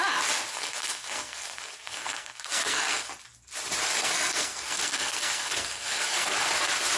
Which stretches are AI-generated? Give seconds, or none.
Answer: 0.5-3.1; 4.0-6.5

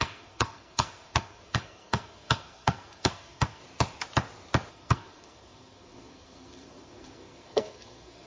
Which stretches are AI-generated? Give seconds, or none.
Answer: 0.0-3.6; 4.7-8.3

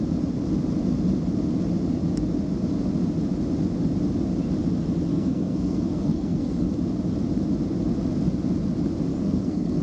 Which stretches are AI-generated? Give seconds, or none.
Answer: 5.1-6.7; 9.1-9.8

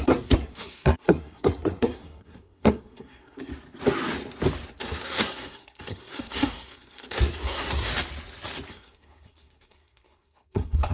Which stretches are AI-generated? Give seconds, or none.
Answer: 0.0-3.5; 4.8-7.9; 8.7-10.9

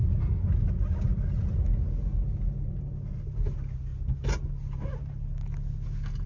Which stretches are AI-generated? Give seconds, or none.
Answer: none

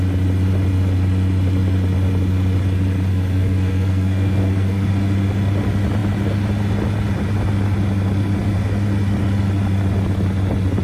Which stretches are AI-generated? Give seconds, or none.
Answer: 3.1-4.9

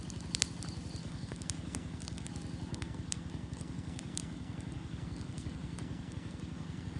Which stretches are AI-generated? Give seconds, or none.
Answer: 1.0-2.3; 2.7-7.0

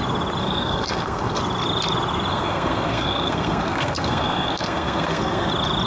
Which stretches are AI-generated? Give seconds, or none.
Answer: 0.4-1.4; 2.3-5.5